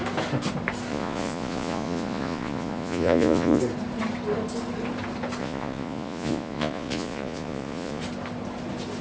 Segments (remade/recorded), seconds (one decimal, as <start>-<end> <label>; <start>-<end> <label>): 0.0-0.9 recorded; 0.9-3.6 remade; 3.6-5.4 recorded; 5.4-8.0 remade; 8.0-9.0 recorded